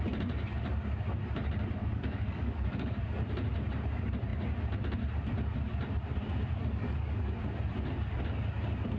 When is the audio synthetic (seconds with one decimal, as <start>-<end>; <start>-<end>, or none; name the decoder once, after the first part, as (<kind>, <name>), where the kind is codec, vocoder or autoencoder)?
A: 1.8-3.0 (codec, DAC); 6.6-7.4